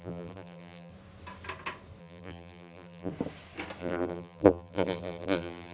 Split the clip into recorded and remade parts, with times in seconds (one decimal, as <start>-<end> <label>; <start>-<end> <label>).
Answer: 0.0-0.9 remade; 0.9-2.0 recorded; 2.0-3.1 remade; 3.1-3.8 recorded; 3.8-5.7 remade